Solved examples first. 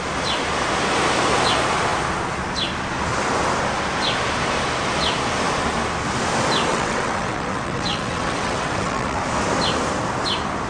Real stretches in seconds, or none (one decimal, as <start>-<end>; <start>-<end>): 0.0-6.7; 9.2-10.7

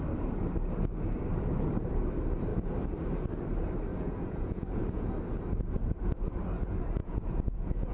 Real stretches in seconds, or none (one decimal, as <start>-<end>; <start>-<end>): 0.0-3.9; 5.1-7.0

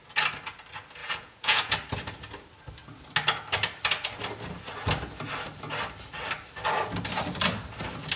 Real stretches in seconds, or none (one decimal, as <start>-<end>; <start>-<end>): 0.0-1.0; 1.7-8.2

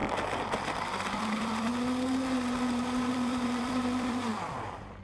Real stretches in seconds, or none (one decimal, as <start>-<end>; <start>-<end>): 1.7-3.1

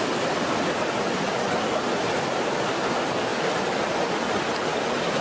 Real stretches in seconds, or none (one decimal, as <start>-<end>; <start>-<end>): 0.0-5.2

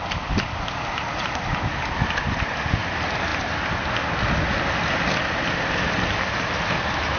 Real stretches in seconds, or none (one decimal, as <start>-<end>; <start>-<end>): 0.0-7.2

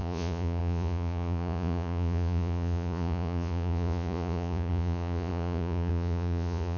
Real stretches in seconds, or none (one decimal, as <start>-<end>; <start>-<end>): none